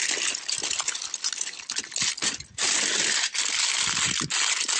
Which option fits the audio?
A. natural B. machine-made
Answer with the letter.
A